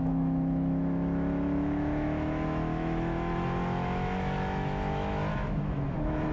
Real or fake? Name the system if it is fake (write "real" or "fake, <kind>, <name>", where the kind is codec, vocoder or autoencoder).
fake, autoencoder, DAC-VAE